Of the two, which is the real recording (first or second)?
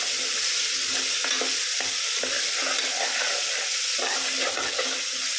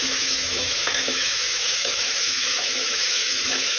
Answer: first